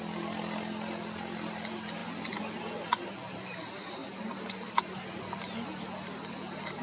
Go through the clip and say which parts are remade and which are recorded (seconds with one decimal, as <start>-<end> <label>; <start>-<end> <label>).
0.0-6.8 recorded